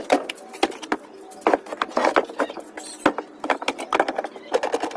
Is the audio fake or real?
real